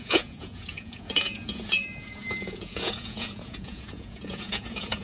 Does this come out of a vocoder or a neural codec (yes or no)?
yes